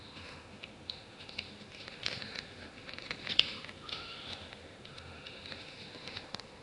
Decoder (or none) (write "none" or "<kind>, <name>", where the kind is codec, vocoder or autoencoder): autoencoder, DAC-VAE